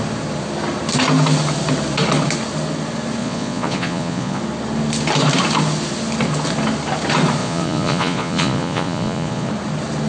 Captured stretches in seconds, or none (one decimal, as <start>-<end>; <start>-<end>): 0.0-3.2; 4.4-7.4; 9.5-10.1